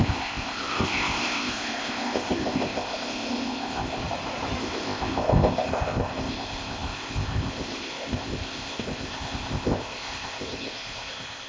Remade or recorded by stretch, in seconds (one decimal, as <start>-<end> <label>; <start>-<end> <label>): 0.0-4.0 remade; 4.0-4.6 recorded; 4.6-11.5 remade